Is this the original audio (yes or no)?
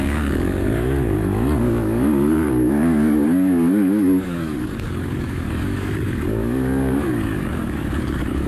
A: no